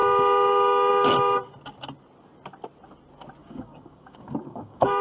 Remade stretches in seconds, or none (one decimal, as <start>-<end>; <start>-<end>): 3.4-5.0